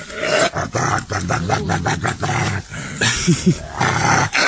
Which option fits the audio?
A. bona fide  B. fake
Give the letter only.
A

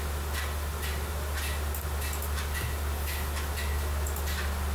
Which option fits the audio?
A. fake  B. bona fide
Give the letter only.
B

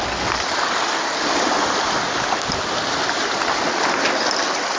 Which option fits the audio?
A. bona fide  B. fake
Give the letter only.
A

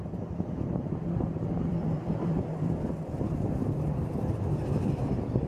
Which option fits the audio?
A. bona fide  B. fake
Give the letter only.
B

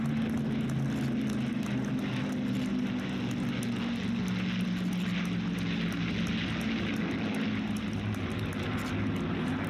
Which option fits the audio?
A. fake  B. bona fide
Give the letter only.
B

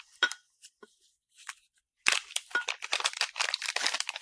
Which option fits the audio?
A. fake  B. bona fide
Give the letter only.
A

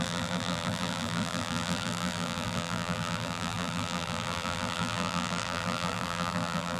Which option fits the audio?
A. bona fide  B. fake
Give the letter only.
B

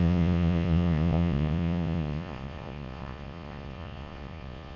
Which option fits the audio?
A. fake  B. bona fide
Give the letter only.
A